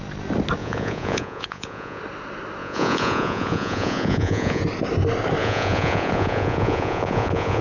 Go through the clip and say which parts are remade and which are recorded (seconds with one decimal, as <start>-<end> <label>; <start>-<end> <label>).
0.0-0.6 recorded; 0.6-2.0 remade; 2.0-2.6 recorded; 2.6-4.6 remade; 4.6-5.4 recorded; 5.4-7.6 remade